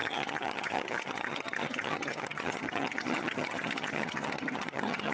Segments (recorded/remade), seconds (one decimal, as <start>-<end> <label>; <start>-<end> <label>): 0.0-5.1 remade